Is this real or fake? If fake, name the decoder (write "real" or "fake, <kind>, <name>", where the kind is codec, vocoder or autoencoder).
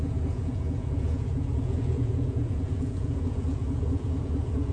fake, vocoder, Vocos